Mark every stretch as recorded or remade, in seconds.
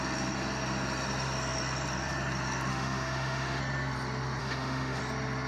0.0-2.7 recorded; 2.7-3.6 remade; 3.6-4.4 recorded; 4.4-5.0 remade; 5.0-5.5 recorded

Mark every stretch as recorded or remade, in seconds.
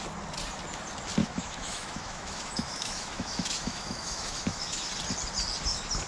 0.0-1.2 recorded; 1.2-4.9 remade; 4.9-6.1 recorded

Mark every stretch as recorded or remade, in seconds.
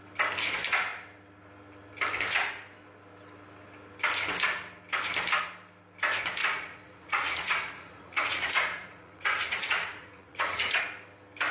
0.0-6.4 recorded; 6.4-10.8 remade; 10.8-11.5 recorded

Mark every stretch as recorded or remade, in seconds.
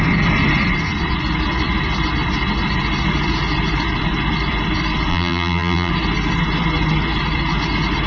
0.0-5.1 recorded; 5.1-5.9 remade; 5.9-8.1 recorded